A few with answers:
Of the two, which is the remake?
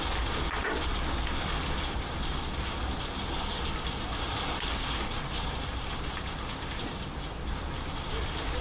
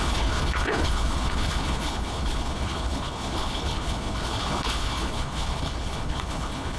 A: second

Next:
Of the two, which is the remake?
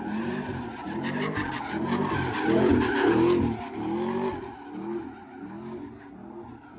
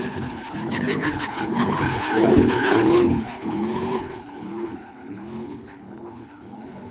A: second